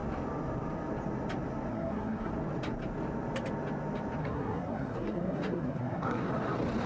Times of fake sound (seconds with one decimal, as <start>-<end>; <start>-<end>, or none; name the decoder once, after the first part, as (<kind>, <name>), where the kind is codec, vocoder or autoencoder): 1.7-2.3 (codec, SNAC); 4.2-6.3